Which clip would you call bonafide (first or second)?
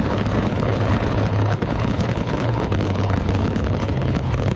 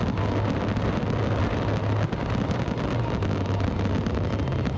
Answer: second